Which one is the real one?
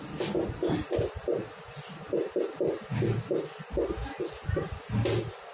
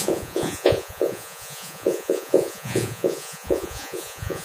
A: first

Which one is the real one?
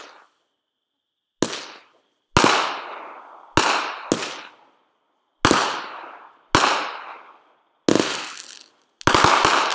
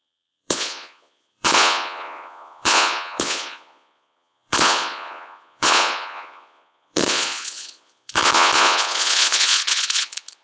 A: first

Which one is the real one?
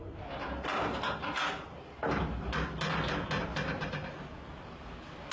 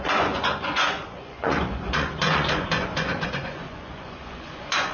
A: first